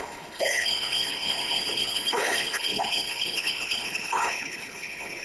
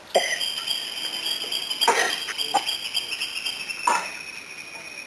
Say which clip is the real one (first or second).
second